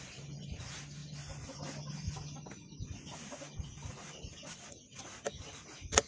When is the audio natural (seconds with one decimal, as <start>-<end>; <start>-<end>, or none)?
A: 0.0-6.1